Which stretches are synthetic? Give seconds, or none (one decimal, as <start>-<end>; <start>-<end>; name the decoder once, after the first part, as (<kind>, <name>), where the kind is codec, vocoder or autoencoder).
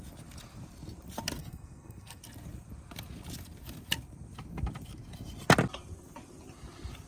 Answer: 1.4-2.2 (codec, SNAC)